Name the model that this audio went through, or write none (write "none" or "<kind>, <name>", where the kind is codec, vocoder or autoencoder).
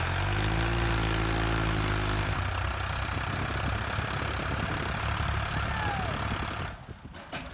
none